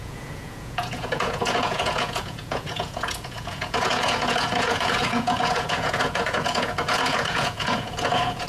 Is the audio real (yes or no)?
no